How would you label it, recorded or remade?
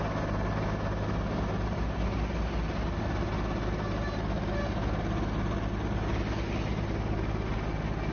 recorded